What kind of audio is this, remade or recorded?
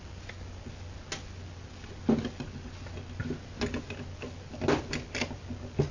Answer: recorded